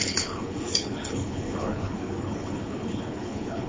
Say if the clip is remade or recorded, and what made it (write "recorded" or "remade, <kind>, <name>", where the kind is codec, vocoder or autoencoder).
remade, codec, HILCodec